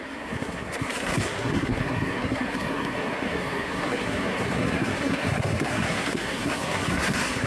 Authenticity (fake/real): fake